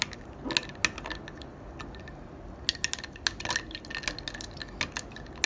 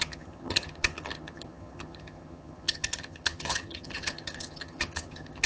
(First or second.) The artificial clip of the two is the second